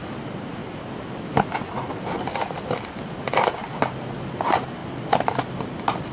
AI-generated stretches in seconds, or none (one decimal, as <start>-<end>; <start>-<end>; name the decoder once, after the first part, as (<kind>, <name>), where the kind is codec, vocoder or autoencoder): none